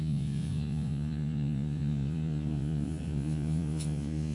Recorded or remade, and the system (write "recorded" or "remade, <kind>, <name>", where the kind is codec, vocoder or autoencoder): remade, vocoder, Vocos